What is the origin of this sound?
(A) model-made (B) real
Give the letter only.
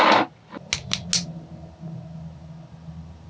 B